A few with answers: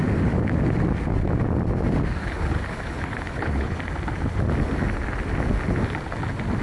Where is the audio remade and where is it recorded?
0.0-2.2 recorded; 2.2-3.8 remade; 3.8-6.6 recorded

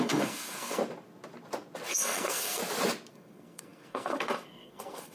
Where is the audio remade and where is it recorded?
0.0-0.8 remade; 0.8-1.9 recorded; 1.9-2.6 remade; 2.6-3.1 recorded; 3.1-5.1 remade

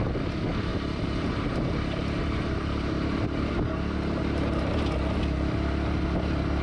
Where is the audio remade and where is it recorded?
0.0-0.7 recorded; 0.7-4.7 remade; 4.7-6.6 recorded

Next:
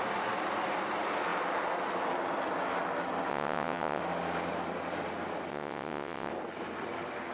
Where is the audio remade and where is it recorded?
0.0-3.3 recorded; 3.3-4.0 remade; 4.0-5.5 recorded; 5.5-6.3 remade; 6.3-7.3 recorded

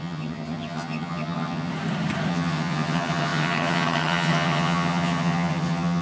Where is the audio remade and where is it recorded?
0.0-1.7 remade; 1.7-2.3 recorded; 2.3-6.0 remade

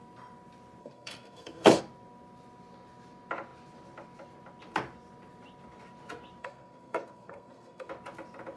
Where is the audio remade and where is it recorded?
0.0-0.8 recorded; 0.8-1.8 remade; 1.8-6.4 recorded; 6.4-7.9 remade; 7.9-8.6 recorded

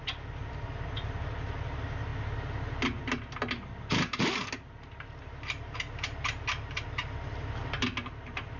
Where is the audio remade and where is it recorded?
0.0-8.6 recorded